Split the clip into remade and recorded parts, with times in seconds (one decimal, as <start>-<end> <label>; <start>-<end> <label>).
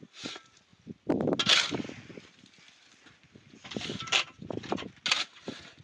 0.0-5.8 recorded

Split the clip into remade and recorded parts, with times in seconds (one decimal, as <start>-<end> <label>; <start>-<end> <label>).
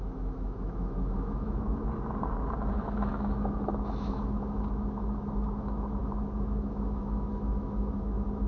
0.0-1.8 remade; 1.8-2.7 recorded; 2.7-8.5 remade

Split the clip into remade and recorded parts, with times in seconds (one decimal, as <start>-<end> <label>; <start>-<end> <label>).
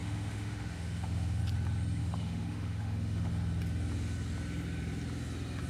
0.0-1.4 remade; 1.4-2.0 recorded; 2.0-3.3 remade; 3.3-5.7 recorded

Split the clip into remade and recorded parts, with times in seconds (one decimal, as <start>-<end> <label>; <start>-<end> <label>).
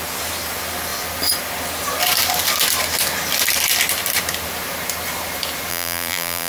0.0-5.7 recorded; 5.7-6.5 remade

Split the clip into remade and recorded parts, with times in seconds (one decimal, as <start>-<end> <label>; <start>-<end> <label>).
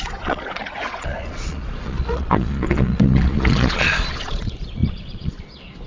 0.0-5.9 remade